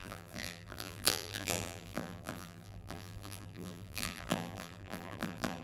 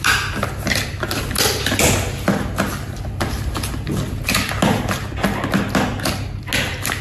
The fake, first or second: first